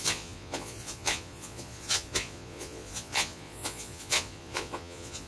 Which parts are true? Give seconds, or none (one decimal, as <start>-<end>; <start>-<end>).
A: none